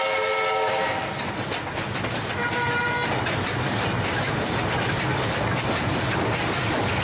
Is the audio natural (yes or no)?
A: yes